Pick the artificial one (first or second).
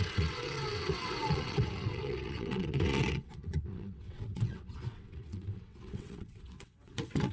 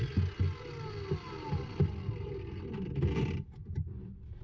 first